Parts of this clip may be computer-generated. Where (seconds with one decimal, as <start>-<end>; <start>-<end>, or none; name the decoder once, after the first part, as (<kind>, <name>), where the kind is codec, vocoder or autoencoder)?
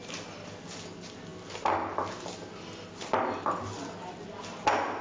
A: none